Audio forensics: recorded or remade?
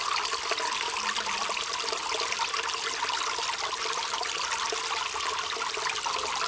recorded